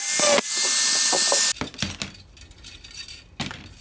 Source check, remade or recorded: recorded